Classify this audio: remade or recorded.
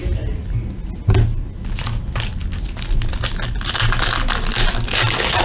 recorded